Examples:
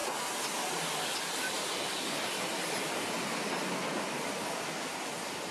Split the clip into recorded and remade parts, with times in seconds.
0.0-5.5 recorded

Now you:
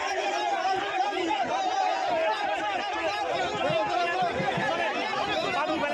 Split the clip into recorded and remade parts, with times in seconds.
0.0-0.6 recorded; 0.6-1.7 remade; 1.7-5.9 recorded

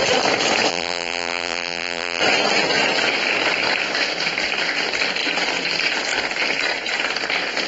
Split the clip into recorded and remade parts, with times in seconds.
0.0-0.7 recorded; 0.7-2.2 remade; 2.2-7.7 recorded

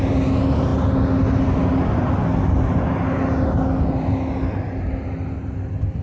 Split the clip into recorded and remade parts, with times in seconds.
0.0-6.0 recorded

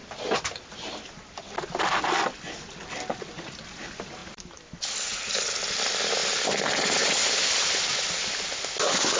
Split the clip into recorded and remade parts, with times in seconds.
0.0-9.2 remade

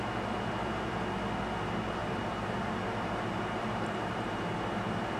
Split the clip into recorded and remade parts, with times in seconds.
0.0-2.0 recorded; 2.0-5.2 remade